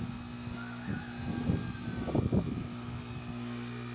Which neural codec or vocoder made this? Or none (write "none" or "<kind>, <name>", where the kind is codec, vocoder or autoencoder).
none